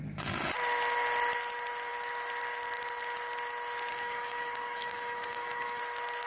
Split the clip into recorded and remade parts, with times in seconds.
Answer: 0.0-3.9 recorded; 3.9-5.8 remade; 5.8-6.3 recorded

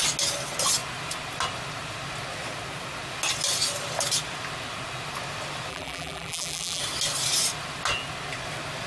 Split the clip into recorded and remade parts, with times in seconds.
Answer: 0.0-5.7 recorded; 5.7-6.8 remade; 6.8-8.9 recorded

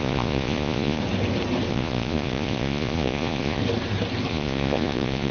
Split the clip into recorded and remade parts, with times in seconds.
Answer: 0.0-1.0 remade; 1.0-1.7 recorded; 1.7-3.6 remade; 3.6-4.3 recorded; 4.3-5.3 remade

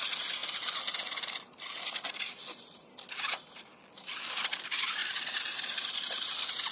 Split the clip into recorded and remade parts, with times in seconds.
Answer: 0.0-0.4 recorded; 0.4-3.8 remade; 3.8-6.7 recorded

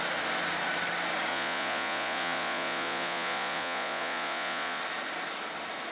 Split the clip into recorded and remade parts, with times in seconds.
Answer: 0.0-1.3 recorded; 1.3-4.8 remade; 4.8-5.9 recorded

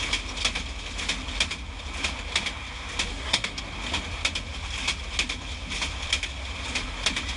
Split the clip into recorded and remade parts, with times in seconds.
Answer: 0.0-3.1 recorded; 3.1-3.6 remade; 3.6-7.4 recorded

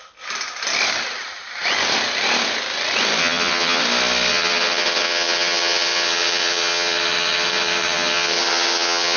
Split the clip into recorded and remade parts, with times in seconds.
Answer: 0.0-3.2 recorded; 3.2-3.8 remade; 3.8-4.3 recorded; 4.3-9.2 remade